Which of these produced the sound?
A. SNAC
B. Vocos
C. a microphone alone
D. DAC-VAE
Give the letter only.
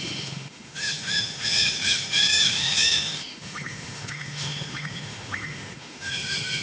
D